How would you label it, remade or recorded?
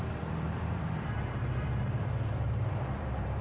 remade